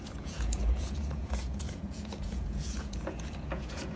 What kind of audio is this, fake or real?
fake